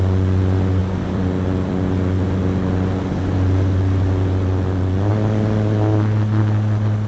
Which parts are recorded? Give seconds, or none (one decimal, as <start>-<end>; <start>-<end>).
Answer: 5.1-6.4